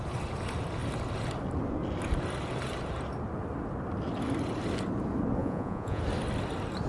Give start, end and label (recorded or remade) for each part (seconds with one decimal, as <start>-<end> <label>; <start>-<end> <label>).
0.0-5.4 recorded; 5.4-6.0 remade; 6.0-6.9 recorded